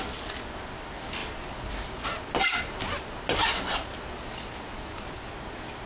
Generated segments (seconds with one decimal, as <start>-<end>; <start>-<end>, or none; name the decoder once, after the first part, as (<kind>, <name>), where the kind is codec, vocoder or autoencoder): none